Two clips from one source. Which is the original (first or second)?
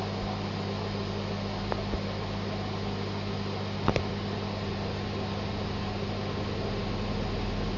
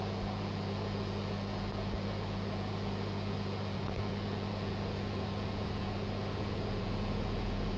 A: first